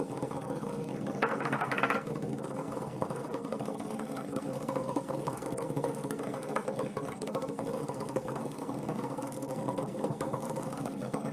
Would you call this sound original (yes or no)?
no